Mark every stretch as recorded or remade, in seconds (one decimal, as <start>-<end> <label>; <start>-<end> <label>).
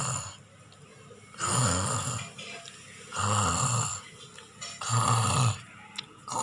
0.0-6.4 recorded